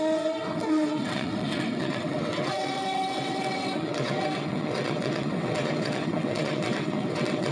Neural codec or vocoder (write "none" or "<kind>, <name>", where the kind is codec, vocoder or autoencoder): vocoder, WaveNeXt